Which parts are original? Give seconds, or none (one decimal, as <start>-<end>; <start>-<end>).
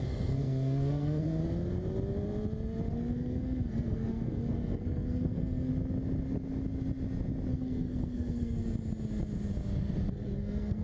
1.4-2.9; 5.7-7.5; 8.6-10.1